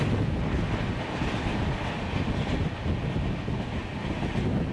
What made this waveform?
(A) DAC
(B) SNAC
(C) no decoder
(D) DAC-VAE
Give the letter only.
C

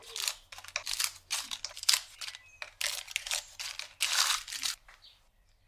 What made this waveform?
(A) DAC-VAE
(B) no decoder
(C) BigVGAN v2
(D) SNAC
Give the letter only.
B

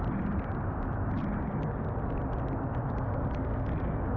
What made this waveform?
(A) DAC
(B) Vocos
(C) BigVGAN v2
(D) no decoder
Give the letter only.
D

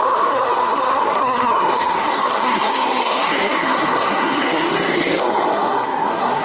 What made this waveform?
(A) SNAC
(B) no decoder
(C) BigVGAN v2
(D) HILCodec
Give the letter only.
A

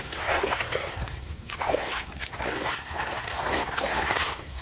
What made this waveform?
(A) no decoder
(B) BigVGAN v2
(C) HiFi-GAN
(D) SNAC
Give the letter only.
D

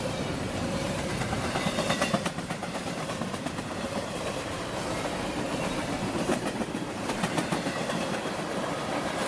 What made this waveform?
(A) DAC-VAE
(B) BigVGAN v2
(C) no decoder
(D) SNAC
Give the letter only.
B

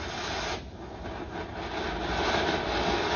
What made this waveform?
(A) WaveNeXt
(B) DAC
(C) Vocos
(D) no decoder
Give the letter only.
D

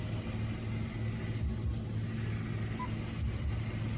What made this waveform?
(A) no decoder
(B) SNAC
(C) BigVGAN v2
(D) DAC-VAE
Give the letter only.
A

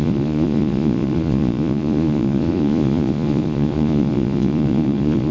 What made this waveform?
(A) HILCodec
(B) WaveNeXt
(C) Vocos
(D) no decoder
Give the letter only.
C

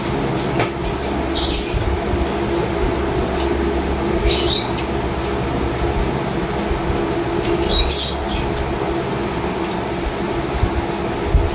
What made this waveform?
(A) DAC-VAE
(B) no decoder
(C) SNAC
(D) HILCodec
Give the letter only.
B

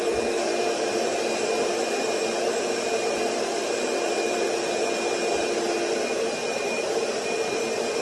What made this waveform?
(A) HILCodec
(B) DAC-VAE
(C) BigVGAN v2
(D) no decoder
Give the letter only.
C